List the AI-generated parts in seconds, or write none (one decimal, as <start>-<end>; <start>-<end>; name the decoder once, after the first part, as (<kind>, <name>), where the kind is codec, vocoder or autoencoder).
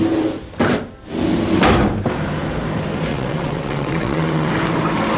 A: 3.1-4.5 (vocoder, WaveNeXt)